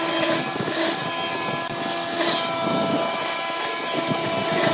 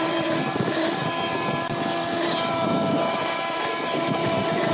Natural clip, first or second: first